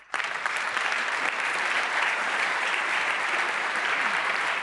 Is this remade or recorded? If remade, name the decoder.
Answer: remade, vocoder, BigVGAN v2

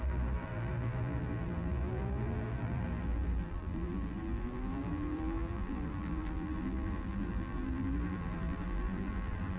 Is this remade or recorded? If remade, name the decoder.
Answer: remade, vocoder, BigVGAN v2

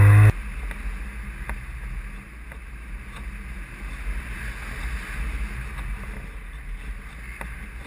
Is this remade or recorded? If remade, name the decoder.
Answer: recorded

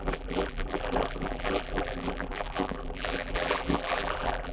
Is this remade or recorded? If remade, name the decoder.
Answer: remade, vocoder, BigVGAN v2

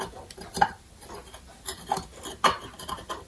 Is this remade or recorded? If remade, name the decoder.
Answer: remade, vocoder, BigVGAN v2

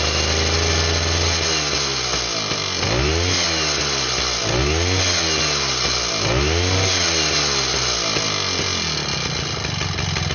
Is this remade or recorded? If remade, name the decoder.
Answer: recorded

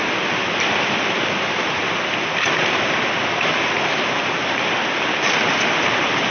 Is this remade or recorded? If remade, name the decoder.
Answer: recorded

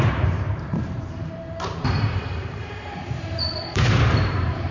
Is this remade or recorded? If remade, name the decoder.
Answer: remade, vocoder, BigVGAN v2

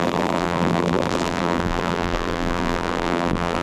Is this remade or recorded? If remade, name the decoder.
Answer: remade, vocoder, BigVGAN v2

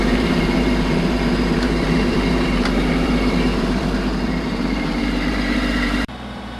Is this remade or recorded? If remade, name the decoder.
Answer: remade, vocoder, BigVGAN v2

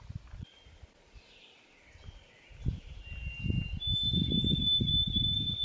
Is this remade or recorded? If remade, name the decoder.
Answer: recorded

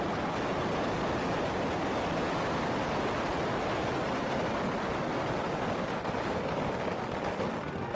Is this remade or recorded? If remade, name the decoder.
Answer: recorded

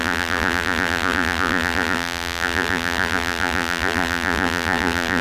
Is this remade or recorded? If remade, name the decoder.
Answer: remade, vocoder, BigVGAN v2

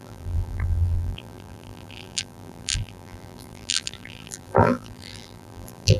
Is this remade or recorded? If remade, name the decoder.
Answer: remade, vocoder, BigVGAN v2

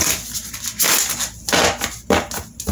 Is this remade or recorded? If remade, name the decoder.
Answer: recorded